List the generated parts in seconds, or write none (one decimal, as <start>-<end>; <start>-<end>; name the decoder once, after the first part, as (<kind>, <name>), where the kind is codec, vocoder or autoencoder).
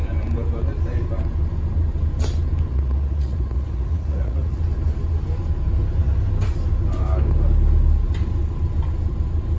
2.7-4.6 (vocoder, Vocos)